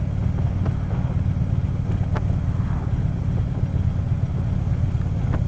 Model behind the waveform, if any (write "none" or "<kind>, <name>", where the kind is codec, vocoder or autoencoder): none